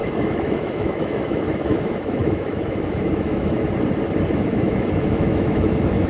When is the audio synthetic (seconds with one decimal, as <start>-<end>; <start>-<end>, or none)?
0.0-3.6; 4.3-6.1